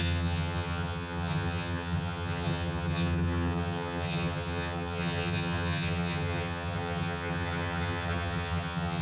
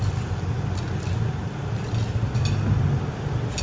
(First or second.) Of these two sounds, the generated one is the first